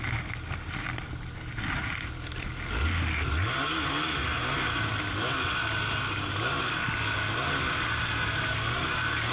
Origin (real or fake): real